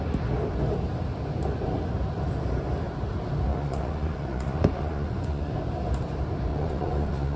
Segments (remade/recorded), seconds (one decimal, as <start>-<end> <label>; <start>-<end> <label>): 0.0-3.5 recorded; 3.5-5.5 remade; 5.5-6.5 recorded; 6.5-7.4 remade